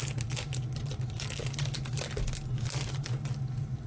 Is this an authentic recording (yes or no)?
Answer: yes